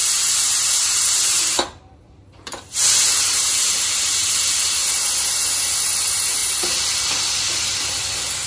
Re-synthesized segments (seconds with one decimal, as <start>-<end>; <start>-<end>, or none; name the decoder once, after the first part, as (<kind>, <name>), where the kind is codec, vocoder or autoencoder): 0.0-4.5 (vocoder, BigVGAN v2)

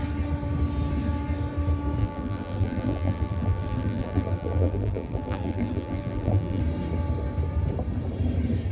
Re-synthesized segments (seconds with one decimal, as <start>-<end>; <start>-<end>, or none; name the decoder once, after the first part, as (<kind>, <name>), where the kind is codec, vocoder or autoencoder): 2.0-6.6 (vocoder, BigVGAN v2)

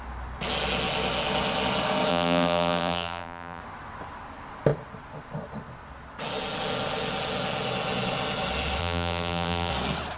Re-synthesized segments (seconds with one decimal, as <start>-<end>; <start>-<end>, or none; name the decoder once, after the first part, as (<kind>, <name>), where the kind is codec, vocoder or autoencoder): 2.1-3.6 (vocoder, BigVGAN v2); 8.8-9.7

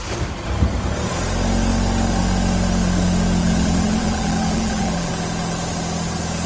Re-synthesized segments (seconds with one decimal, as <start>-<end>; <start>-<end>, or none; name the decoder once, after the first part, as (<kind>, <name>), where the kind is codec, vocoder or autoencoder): 3.4-5.1 (vocoder, BigVGAN v2)